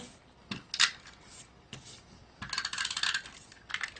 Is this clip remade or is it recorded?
recorded